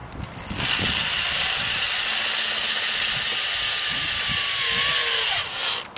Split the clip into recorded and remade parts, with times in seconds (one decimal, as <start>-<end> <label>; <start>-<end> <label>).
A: 0.0-6.0 recorded